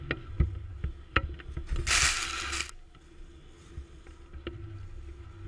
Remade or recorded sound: recorded